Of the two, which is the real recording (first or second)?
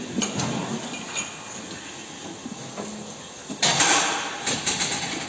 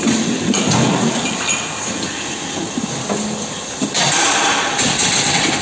first